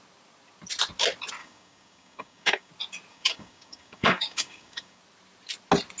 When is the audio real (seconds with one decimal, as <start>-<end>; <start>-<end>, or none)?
0.0-1.4; 2.7-3.1; 5.0-6.0